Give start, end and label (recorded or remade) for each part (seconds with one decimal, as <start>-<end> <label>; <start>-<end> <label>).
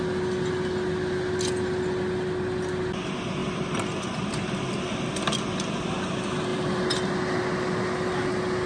0.0-3.4 recorded; 3.4-6.0 remade; 6.0-6.5 recorded; 6.5-7.1 remade; 7.1-8.7 recorded